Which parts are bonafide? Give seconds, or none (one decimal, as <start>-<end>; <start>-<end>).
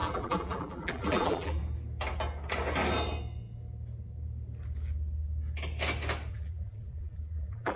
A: 1.6-6.3